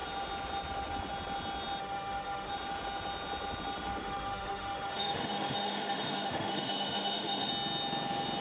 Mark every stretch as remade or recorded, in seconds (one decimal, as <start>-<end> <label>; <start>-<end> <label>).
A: 0.0-1.8 recorded; 1.8-2.5 remade; 2.5-3.9 recorded; 3.9-7.5 remade; 7.5-8.4 recorded